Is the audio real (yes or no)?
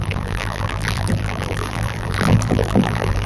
no